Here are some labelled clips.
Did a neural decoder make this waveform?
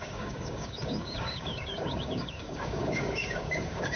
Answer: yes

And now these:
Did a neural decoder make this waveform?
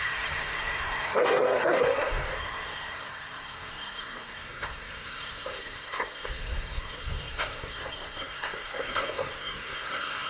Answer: yes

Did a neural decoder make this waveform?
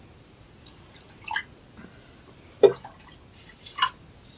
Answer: no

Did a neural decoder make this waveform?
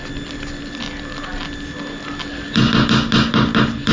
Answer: no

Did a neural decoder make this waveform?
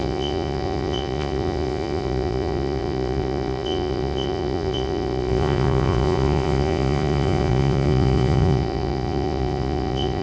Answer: yes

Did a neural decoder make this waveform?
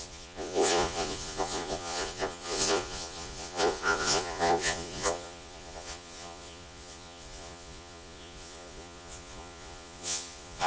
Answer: yes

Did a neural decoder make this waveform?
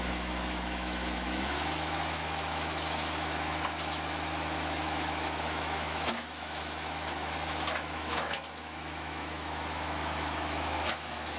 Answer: yes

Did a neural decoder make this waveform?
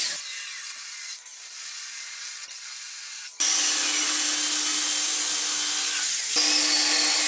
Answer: no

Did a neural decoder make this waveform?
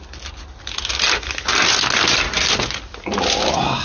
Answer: no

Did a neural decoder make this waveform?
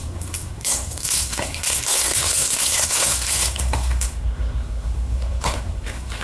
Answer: yes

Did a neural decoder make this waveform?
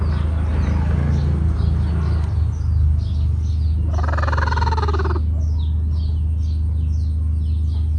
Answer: no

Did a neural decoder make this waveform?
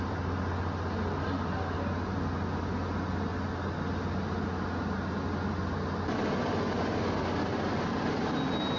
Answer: no